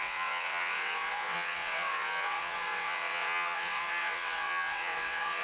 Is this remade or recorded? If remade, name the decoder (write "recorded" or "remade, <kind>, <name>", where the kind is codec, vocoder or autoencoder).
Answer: remade, vocoder, WaveNeXt